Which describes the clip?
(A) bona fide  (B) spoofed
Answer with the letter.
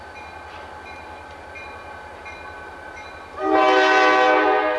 A